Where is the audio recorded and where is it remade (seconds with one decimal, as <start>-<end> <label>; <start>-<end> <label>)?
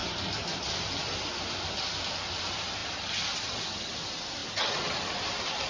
0.0-4.4 recorded; 4.4-5.2 remade; 5.2-5.7 recorded